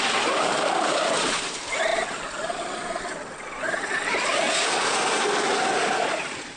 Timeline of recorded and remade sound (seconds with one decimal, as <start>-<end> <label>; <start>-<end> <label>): 0.0-6.6 recorded